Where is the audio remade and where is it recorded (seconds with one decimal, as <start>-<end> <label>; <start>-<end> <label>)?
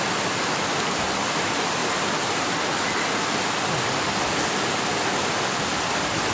0.0-6.3 recorded